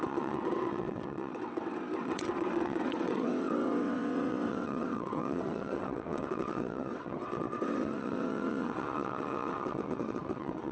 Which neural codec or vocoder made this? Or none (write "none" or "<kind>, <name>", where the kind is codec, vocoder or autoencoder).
vocoder, WaveNeXt